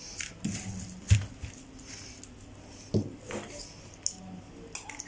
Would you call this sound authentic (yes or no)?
yes